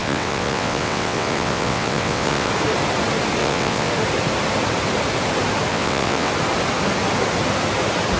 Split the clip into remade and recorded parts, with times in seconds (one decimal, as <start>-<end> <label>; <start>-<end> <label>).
0.0-2.5 remade; 2.5-3.4 recorded; 3.4-3.9 remade; 3.9-5.7 recorded; 5.7-6.3 remade; 6.3-8.2 recorded